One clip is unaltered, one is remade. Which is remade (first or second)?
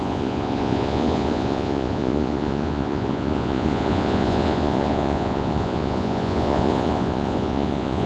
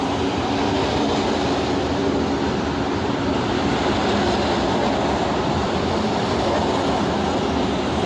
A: first